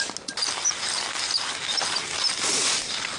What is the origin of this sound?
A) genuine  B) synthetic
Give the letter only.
A